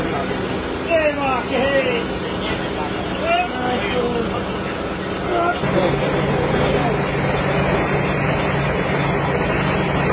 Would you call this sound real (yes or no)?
yes